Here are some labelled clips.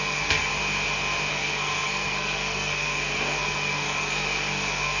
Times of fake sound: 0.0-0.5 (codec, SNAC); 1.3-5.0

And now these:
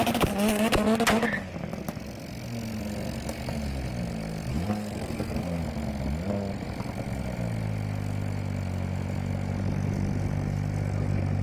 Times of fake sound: 4.5-5.6 (codec, SNAC)

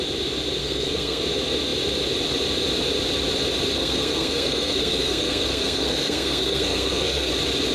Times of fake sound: 0.6-1.2 (codec, SNAC); 3.8-7.3

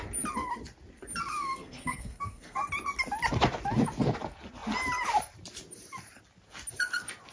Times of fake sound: 1.3-2.7 (codec, SNAC)

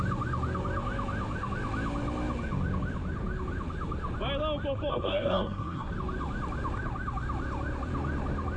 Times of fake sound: 4.9-5.9 (codec, SNAC)

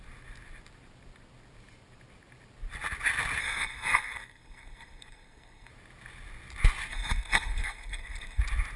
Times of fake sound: 3.4-5.7 (codec, SNAC); 6.9-8.4

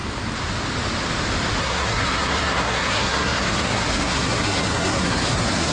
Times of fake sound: 1.6-5.7 (codec, SNAC)

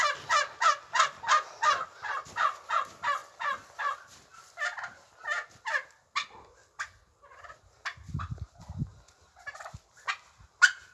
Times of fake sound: none